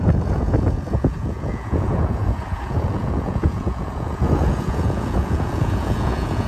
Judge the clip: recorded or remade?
remade